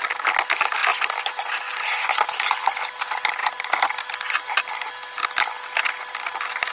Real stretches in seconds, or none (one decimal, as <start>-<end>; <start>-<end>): 0.0-6.7